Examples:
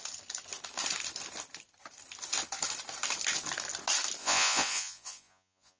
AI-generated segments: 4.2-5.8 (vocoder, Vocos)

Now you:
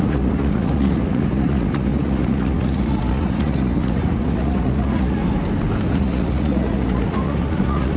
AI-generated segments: 0.0-5.2 (vocoder, Vocos); 5.9-8.0

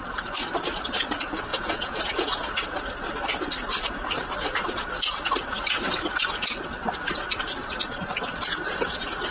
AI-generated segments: 1.5-2.0 (vocoder, Vocos)

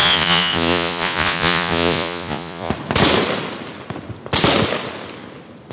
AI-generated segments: 0.0-2.7 (vocoder, Vocos)

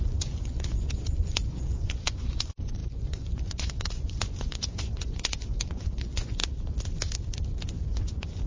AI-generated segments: 0.0-6.4 (vocoder, Vocos); 7.9-8.5